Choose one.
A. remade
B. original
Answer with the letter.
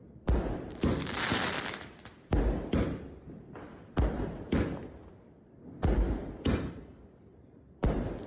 A